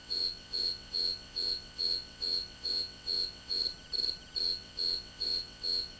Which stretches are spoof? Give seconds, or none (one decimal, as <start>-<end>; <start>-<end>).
0.0-3.6; 4.4-6.0